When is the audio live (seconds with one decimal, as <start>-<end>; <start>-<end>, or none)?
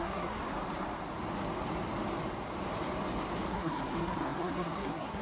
0.4-3.5